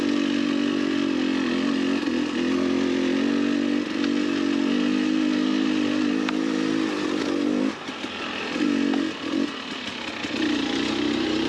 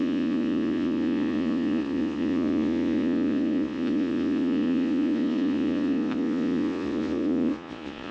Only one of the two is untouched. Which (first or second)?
first